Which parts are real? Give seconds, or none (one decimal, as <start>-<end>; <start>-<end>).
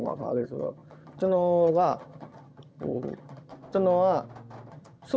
3.5-4.7